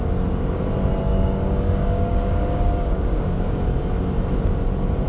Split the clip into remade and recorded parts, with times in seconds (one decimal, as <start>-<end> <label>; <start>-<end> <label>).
0.0-1.1 recorded; 1.1-3.5 remade; 3.5-5.1 recorded